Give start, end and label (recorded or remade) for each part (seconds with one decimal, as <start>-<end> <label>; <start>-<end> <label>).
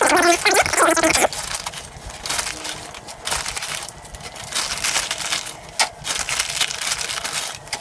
0.0-7.8 recorded